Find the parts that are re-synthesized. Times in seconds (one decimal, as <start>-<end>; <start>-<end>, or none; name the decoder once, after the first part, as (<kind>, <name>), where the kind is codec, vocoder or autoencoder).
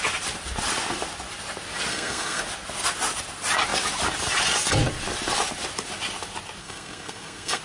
1.9-2.4 (codec, SNAC); 6.6-7.6